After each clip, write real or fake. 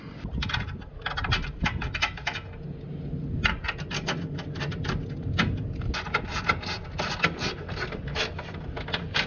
real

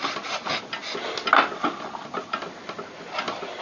real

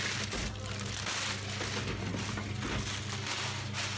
real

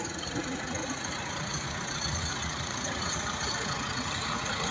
fake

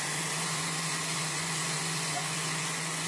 fake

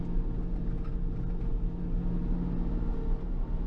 real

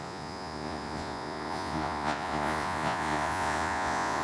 fake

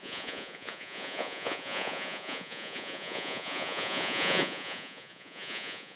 fake